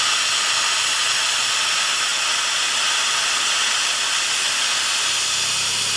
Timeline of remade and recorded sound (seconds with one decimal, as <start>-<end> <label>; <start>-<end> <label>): 0.0-6.0 recorded